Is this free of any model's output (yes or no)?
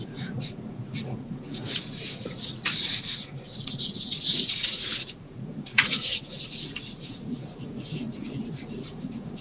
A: no